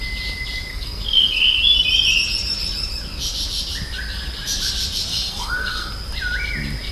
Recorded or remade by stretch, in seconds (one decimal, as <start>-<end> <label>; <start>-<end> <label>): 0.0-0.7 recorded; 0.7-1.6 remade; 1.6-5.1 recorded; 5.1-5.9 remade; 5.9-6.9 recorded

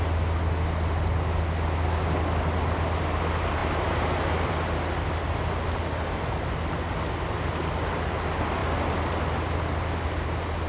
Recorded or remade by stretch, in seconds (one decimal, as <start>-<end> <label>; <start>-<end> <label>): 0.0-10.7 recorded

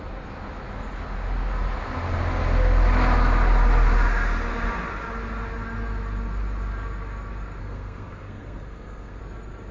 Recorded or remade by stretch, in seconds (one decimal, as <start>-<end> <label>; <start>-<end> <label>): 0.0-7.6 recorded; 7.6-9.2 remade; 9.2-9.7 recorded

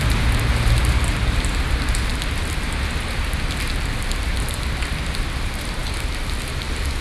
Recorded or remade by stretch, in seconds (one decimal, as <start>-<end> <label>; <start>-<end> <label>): 0.0-7.0 recorded